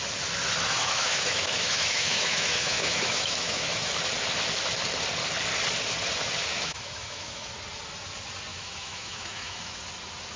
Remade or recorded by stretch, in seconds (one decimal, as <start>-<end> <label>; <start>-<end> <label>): 0.0-0.7 recorded; 0.7-3.9 remade; 3.9-6.5 recorded; 6.5-7.5 remade; 7.5-8.5 recorded; 8.5-9.8 remade; 9.8-10.4 recorded